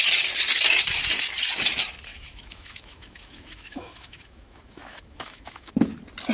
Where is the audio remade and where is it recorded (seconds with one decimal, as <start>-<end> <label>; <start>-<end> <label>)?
0.0-2.1 recorded; 2.1-5.7 remade; 5.7-6.3 recorded